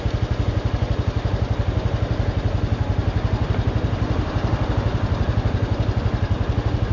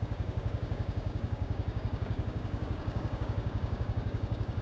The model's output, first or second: second